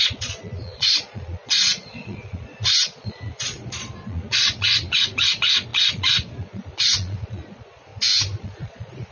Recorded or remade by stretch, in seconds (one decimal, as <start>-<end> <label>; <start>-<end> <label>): 0.0-7.9 remade; 7.9-8.4 recorded; 8.4-9.1 remade